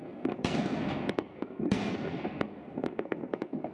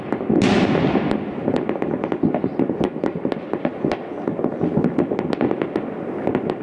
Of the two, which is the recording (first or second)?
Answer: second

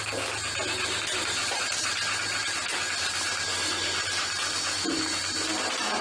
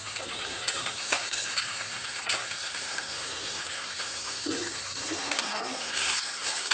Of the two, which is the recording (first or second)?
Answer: first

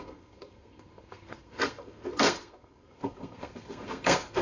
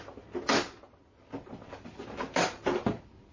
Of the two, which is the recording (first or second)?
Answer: second